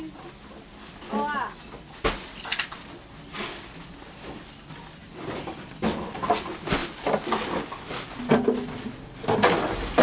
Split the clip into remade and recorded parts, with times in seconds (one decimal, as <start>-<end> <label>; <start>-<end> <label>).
0.0-5.0 recorded; 5.0-5.6 remade; 5.6-10.0 recorded